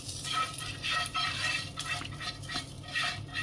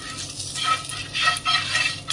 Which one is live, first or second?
second